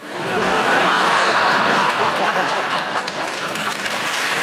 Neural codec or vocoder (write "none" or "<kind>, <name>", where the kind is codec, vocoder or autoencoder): codec, DAC